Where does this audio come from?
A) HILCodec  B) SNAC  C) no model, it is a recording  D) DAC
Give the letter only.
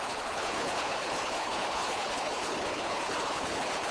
A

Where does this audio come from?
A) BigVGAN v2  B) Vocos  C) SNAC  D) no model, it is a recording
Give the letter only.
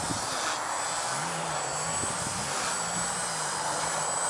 D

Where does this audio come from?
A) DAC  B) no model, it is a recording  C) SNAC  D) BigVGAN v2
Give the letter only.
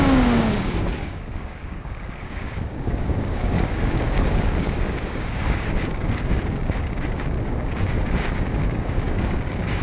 A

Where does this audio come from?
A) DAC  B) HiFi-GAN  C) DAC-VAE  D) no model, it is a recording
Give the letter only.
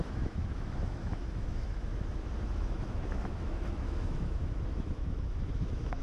C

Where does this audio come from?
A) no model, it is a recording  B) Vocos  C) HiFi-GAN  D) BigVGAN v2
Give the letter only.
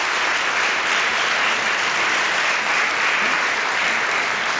D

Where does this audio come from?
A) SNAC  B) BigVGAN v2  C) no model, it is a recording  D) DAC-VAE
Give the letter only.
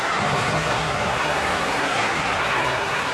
A